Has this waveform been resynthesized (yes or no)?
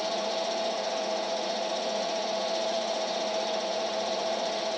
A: yes